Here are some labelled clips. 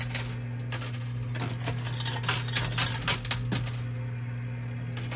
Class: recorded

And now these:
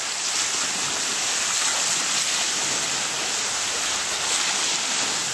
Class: recorded